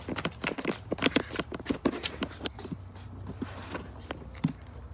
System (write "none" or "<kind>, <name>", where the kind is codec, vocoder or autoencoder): none